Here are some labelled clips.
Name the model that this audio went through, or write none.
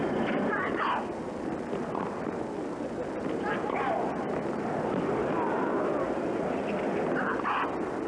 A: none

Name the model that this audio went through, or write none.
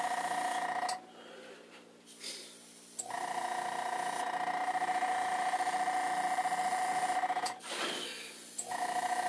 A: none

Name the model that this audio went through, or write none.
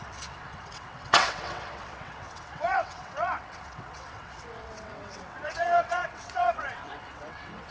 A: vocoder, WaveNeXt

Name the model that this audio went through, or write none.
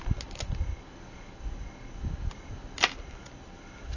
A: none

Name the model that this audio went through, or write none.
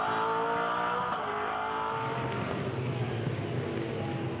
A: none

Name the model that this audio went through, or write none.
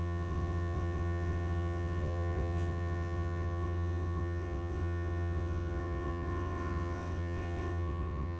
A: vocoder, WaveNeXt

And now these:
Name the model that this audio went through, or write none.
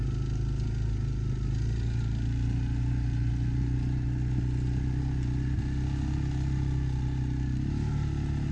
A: none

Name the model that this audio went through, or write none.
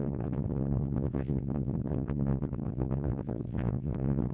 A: vocoder, WaveNeXt